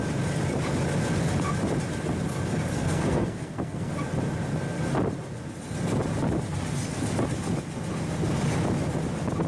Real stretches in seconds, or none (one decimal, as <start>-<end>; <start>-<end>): 0.0-2.7; 3.9-9.5